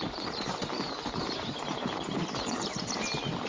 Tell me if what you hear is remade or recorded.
remade